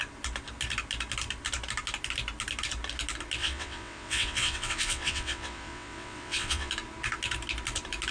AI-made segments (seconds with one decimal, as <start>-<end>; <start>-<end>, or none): 3.4-6.7